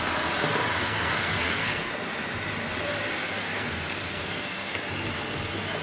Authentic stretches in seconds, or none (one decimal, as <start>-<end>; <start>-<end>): 0.0-0.8; 1.9-3.2; 4.8-5.8